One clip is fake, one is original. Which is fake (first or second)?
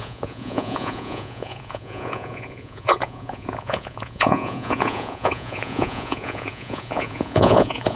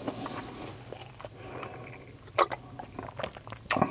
first